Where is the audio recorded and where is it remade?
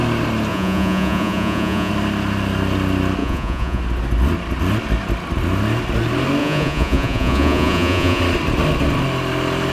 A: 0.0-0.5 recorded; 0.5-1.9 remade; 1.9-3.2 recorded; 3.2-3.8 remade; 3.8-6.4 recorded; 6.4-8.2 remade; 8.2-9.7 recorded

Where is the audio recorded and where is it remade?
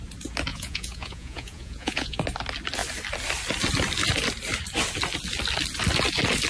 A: 0.0-0.5 recorded; 0.5-2.2 remade; 2.2-6.5 recorded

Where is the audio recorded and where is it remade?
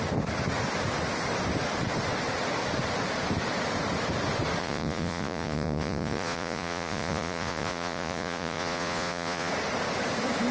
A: 0.0-4.6 recorded; 4.6-9.5 remade; 9.5-10.5 recorded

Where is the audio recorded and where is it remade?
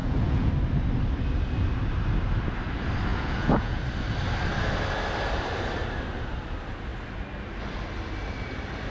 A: 0.0-0.5 remade; 0.5-3.1 recorded; 3.1-3.8 remade; 3.8-8.9 recorded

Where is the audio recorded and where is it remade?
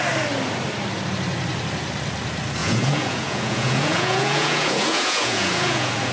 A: 0.0-2.6 recorded; 2.6-6.1 remade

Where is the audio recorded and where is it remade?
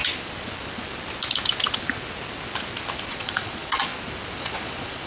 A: 0.0-3.1 recorded; 3.1-3.9 remade; 3.9-4.4 recorded; 4.4-5.1 remade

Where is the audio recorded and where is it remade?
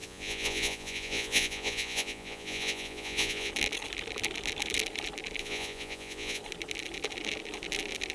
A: 0.0-3.5 remade; 3.5-5.4 recorded; 5.4-6.4 remade; 6.4-8.1 recorded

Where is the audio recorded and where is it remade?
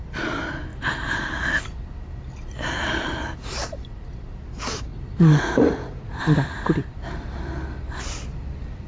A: 0.0-4.9 recorded; 4.9-6.2 remade; 6.2-8.9 recorded